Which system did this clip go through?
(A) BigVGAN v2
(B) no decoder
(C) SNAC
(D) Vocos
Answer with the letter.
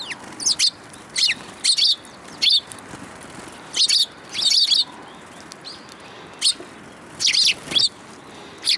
B